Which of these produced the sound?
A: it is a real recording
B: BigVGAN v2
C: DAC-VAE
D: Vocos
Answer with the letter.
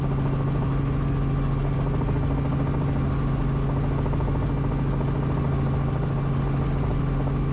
A